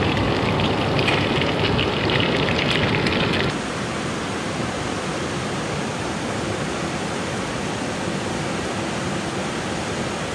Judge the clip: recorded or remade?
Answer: recorded